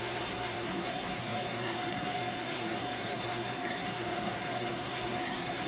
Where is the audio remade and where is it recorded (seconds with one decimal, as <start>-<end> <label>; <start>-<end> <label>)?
0.0-5.7 remade